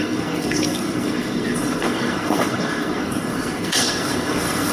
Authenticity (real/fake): fake